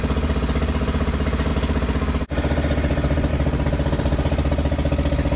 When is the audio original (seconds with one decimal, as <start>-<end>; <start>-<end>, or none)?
0.0-5.4